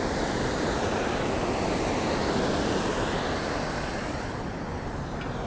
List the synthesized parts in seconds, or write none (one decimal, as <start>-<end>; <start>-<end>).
none